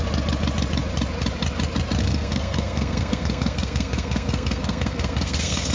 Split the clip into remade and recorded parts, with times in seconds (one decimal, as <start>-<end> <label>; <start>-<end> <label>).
0.0-2.0 recorded; 2.0-5.7 remade